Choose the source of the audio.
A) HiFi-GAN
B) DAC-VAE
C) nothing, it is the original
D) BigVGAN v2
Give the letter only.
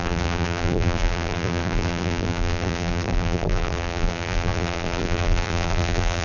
D